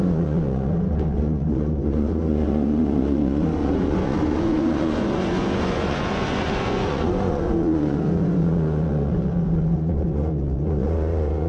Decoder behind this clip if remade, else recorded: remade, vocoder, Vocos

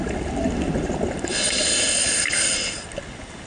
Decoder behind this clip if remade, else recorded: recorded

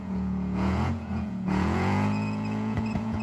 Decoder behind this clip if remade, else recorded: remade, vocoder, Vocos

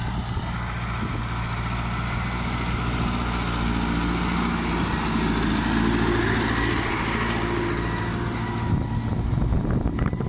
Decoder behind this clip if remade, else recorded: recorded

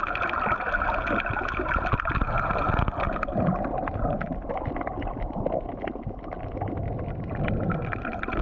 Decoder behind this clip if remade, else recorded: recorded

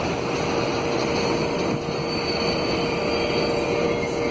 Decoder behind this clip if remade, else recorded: recorded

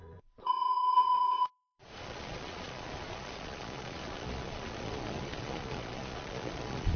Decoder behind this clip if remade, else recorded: remade, vocoder, Vocos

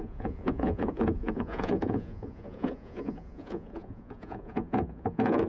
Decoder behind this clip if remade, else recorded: remade, vocoder, Vocos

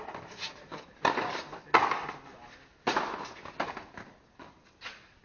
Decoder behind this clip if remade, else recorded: recorded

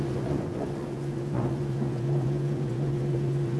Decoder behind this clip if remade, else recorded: remade, vocoder, Vocos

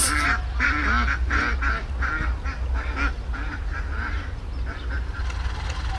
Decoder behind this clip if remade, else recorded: recorded